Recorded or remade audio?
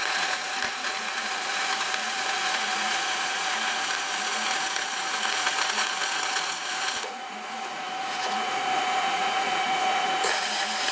remade